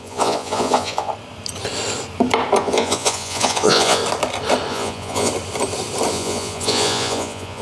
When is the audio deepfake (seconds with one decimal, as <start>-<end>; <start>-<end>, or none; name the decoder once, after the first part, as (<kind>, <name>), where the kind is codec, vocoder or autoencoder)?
0.0-1.1 (vocoder, Vocos); 2.6-4.0; 4.7-5.3; 6.1-7.6